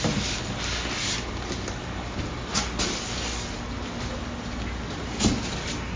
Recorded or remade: recorded